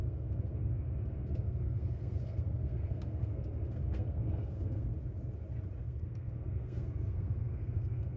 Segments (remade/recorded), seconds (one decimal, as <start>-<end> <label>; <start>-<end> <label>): 0.0-4.9 remade; 4.9-5.8 recorded; 5.8-8.2 remade